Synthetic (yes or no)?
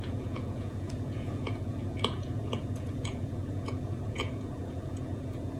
yes